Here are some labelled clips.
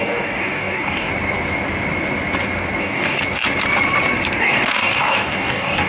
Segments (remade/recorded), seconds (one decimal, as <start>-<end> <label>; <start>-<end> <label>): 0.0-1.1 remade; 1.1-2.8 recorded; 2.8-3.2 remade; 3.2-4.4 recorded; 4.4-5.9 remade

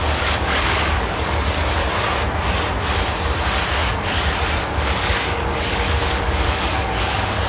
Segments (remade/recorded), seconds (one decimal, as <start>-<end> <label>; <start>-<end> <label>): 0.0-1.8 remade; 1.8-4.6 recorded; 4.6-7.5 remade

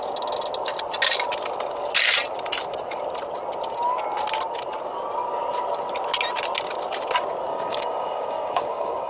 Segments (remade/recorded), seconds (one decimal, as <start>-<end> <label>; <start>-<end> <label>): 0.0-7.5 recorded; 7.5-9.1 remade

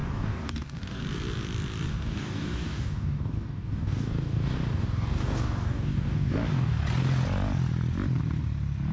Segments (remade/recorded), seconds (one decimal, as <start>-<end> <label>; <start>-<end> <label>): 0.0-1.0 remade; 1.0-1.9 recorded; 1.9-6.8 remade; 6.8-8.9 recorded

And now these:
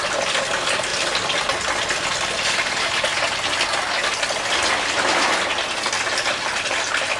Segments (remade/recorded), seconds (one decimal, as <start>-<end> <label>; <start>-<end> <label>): 0.0-7.2 recorded